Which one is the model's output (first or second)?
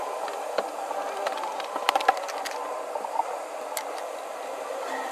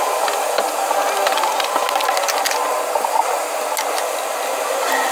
first